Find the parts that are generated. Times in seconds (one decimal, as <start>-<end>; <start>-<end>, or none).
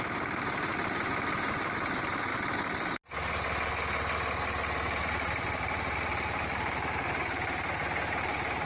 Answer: 0.0-2.3; 5.0-8.7